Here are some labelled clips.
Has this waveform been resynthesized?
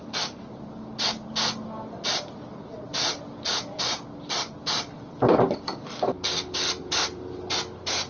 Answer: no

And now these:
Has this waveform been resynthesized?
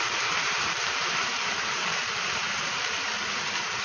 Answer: yes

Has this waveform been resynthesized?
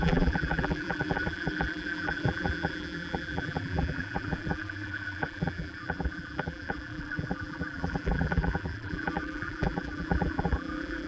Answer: yes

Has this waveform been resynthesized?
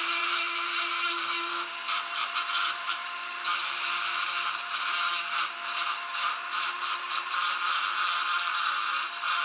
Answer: yes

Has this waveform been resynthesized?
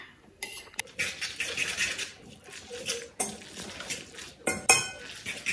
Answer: no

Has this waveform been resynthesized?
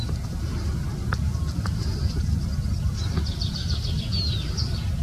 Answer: no